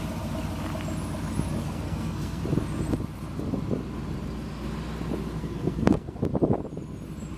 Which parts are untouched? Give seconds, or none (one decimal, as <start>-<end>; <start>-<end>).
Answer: 0.0-1.6; 2.4-5.4; 6.2-7.4